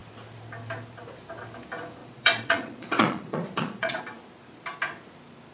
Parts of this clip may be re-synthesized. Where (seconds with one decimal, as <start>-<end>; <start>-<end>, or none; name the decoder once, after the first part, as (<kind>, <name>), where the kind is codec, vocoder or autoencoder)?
2.0-4.0 (vocoder, Vocos)